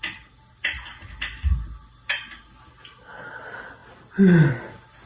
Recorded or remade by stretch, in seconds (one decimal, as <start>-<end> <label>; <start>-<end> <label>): 0.0-5.1 recorded